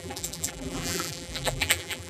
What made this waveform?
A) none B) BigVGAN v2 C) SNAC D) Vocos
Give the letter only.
B